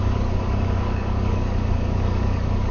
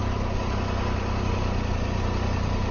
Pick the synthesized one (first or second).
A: first